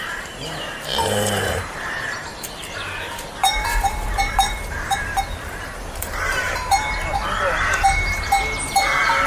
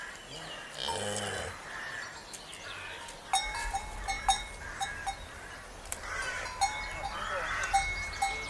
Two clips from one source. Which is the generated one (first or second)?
first